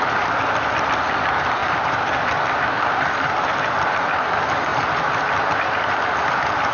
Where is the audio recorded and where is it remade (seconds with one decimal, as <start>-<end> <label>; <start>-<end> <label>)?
0.0-1.6 recorded; 1.6-3.4 remade; 3.4-6.7 recorded